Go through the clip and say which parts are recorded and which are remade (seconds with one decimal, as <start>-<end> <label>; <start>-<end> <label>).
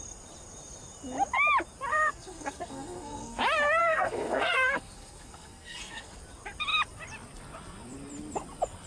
0.0-1.9 recorded; 1.9-3.4 remade; 3.4-3.8 recorded; 3.8-6.2 remade; 6.2-8.9 recorded